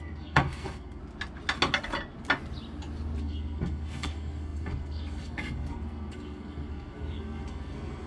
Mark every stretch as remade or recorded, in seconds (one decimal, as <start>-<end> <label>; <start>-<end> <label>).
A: 0.0-1.0 remade; 1.0-3.2 recorded; 3.2-8.1 remade